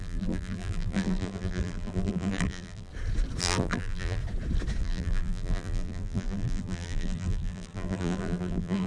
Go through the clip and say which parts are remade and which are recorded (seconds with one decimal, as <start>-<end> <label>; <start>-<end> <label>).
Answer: 0.0-2.9 remade; 2.9-3.4 recorded; 3.4-4.2 remade; 4.2-4.8 recorded; 4.8-8.9 remade